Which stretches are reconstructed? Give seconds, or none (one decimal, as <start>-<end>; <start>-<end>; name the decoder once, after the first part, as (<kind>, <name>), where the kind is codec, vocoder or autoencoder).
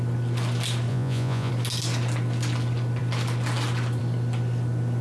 0.9-1.5 (vocoder, Vocos)